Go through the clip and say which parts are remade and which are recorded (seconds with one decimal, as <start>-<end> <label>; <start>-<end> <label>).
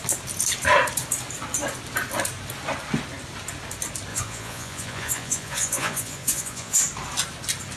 0.0-4.1 recorded; 4.1-6.8 remade; 6.8-7.8 recorded